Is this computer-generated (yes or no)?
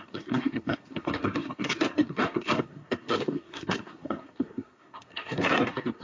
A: yes